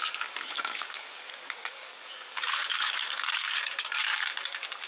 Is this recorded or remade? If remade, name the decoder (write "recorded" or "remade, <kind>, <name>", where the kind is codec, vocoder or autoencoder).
remade, codec, DAC